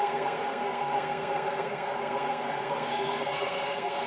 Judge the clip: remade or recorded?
remade